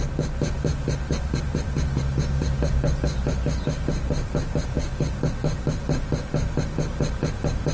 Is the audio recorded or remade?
recorded